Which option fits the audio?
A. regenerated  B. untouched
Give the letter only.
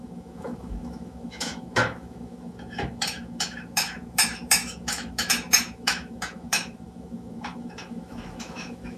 A